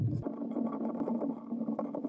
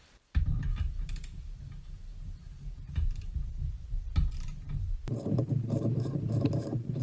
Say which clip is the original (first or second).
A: first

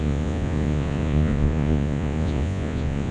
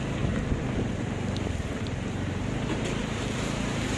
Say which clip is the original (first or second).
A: second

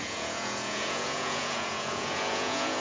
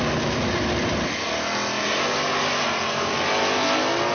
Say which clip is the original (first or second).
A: second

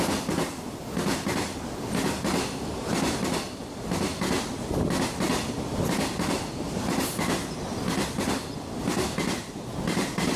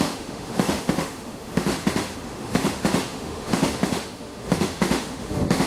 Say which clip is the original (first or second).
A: first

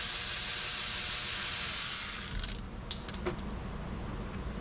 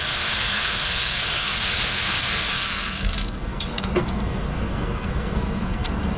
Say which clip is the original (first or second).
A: first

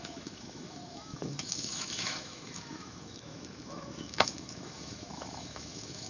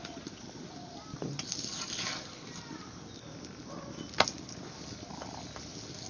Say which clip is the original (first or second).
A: second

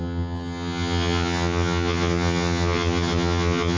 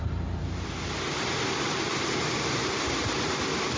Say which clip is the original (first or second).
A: second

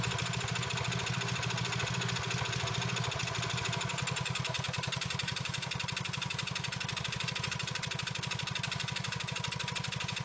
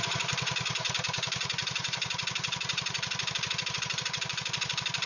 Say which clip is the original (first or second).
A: first